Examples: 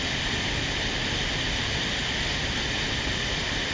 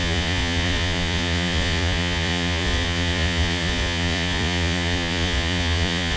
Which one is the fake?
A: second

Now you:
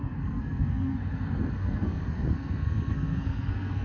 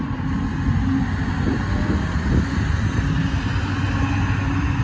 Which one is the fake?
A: first